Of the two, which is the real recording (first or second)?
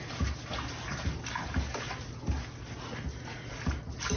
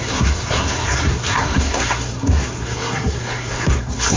first